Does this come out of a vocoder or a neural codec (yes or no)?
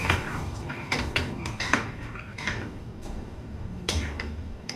yes